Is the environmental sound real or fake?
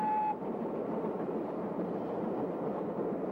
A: real